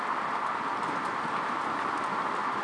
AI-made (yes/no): no